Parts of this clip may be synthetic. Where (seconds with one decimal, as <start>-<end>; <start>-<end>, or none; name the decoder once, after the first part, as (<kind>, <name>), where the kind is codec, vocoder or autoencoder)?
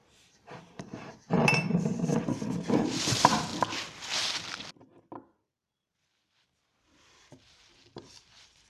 0.0-2.1 (vocoder, BigVGAN v2); 3.0-3.5; 7.2-8.7